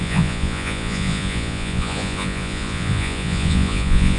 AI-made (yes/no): yes